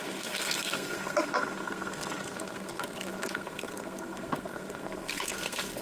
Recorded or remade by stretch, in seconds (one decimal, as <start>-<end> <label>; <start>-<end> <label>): 0.0-5.8 remade